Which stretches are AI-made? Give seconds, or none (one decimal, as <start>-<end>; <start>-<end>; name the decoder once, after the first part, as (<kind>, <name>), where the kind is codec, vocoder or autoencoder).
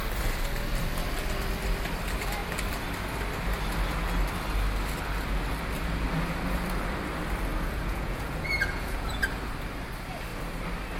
7.5-9.2 (vocoder, Vocos)